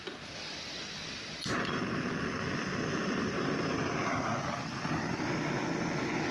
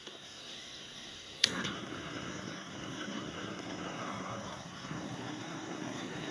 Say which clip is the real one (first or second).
first